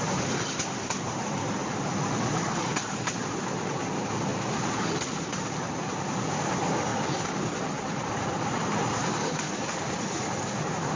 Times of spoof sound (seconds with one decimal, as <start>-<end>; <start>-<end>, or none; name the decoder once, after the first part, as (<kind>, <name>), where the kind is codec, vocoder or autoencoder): 0.0-4.3 (vocoder, BigVGAN v2); 6.2-11.0